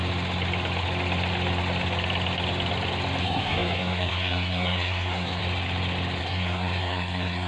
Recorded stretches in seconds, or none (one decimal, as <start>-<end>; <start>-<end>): 0.0-3.2; 5.4-6.2